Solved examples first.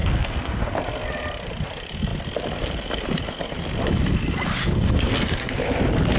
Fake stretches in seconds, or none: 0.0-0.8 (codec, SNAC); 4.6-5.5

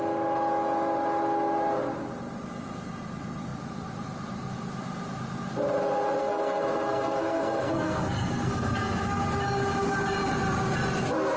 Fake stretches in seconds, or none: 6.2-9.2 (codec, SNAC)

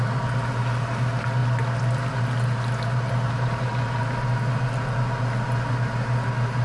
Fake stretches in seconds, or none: none

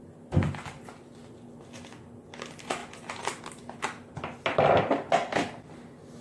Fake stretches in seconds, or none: none

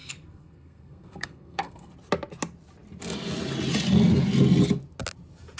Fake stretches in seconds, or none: 0.0-1.9 (codec, SNAC)

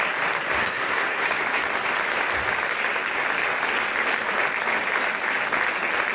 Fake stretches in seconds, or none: 0.6-1.4 (codec, SNAC)